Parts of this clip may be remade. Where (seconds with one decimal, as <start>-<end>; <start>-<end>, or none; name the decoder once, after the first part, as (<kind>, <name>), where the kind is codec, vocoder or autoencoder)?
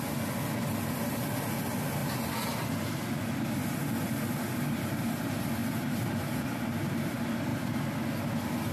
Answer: 2.0-2.7 (vocoder, BigVGAN v2); 5.6-6.4; 7.5-8.1